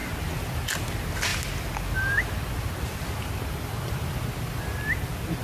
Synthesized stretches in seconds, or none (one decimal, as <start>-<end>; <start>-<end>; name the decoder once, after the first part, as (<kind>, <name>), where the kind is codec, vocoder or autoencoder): none